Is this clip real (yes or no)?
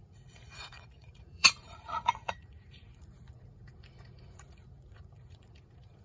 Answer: no